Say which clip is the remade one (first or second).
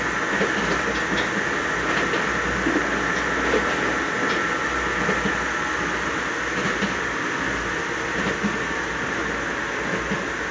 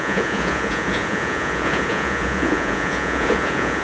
second